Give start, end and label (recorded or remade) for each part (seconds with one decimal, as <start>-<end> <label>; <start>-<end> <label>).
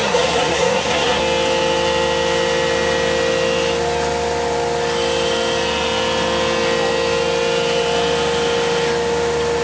0.0-1.2 remade; 1.2-9.6 recorded